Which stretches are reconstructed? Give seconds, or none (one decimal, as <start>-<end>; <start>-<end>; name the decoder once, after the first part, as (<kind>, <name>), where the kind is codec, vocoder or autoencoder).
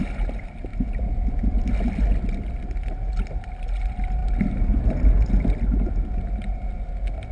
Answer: none